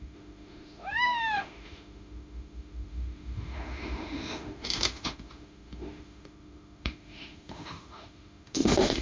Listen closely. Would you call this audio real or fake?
fake